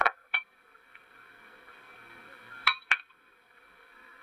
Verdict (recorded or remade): remade